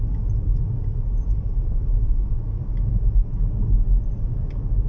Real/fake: real